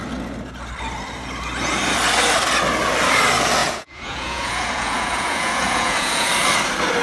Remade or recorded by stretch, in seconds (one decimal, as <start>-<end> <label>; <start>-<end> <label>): 0.0-3.6 recorded; 3.6-6.3 remade; 6.3-7.0 recorded